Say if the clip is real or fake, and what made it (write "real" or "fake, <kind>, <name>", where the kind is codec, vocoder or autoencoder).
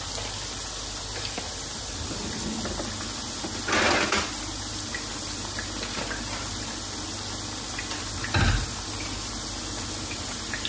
real